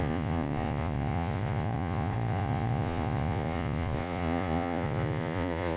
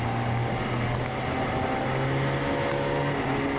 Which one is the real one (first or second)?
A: second